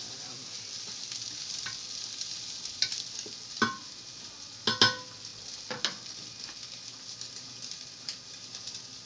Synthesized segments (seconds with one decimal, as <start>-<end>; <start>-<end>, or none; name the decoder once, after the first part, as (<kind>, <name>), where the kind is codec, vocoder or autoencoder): none